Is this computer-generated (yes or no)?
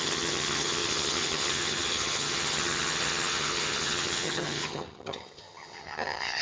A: yes